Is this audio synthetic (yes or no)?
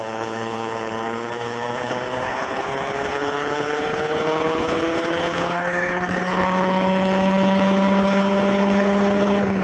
yes